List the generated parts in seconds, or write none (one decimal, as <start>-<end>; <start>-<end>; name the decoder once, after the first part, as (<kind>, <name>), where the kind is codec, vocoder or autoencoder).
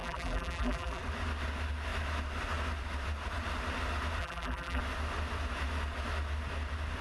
0.0-1.0 (vocoder, BigVGAN v2); 4.2-4.8